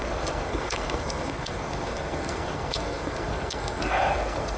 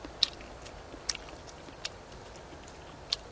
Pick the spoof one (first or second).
first